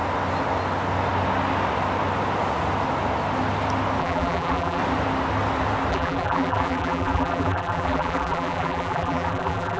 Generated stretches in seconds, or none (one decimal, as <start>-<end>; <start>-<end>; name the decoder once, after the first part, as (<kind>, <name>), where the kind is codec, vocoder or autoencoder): 4.0-4.8 (vocoder, BigVGAN v2); 5.9-9.8